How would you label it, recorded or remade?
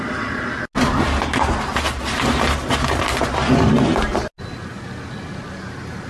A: recorded